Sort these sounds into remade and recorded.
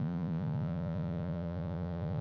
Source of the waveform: remade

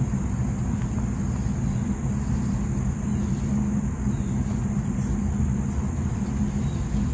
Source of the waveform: recorded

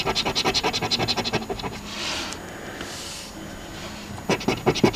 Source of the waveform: recorded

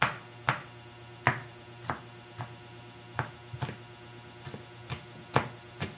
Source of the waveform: recorded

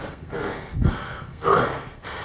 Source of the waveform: remade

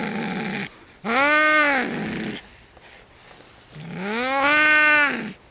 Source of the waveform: recorded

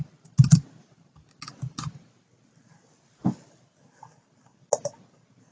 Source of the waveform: recorded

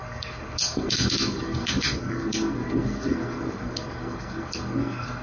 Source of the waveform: remade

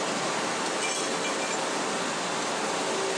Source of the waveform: recorded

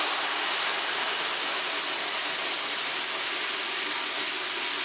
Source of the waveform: recorded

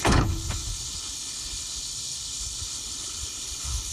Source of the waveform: remade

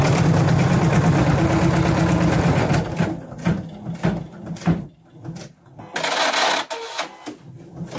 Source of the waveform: recorded